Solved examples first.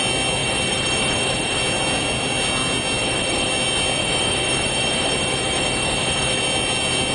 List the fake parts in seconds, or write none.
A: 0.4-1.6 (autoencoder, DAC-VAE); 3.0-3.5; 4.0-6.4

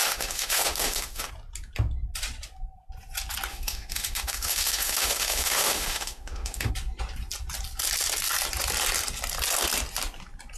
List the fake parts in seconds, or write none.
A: 0.0-1.3 (autoencoder, DAC-VAE); 3.5-6.7

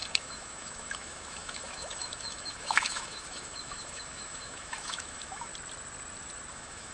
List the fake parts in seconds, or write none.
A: 0.0-5.5 (autoencoder, DAC-VAE); 6.5-6.9

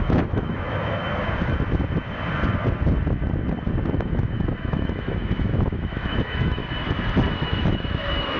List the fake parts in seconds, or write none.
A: 0.0-1.0 (autoencoder, DAC-VAE); 4.0-6.6; 7.3-8.4

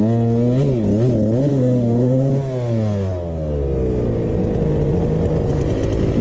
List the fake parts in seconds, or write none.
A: 1.5-2.3 (autoencoder, DAC-VAE)